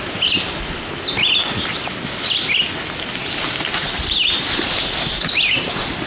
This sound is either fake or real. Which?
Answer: real